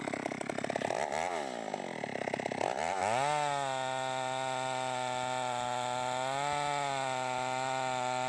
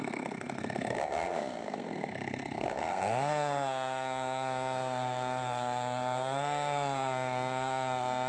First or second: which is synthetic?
second